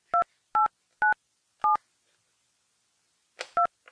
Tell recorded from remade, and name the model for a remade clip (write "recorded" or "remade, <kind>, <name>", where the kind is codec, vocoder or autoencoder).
recorded